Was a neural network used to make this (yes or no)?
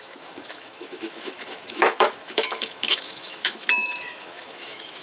yes